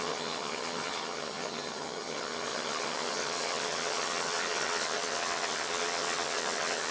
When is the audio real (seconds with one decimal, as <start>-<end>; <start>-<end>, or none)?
none

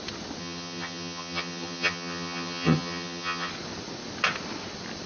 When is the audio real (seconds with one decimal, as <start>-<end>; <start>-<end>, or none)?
0.0-0.4; 3.5-5.1

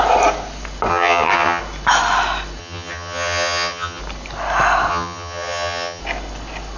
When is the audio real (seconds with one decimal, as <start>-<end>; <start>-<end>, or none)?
0.0-0.9; 1.6-2.6; 4.0-4.9; 6.0-6.8

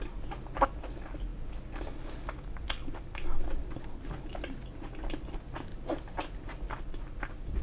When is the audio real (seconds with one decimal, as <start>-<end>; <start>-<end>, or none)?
0.0-7.6